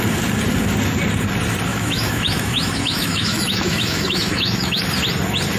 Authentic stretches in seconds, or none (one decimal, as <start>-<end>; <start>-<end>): 0.0-1.7; 4.8-5.6